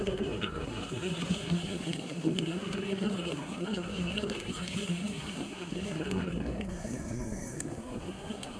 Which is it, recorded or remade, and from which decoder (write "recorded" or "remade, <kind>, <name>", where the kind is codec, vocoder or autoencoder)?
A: remade, codec, SNAC